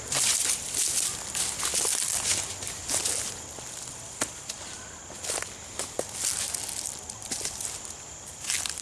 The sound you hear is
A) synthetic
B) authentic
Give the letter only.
B